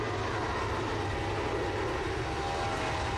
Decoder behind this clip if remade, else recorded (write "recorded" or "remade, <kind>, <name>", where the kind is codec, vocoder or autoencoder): recorded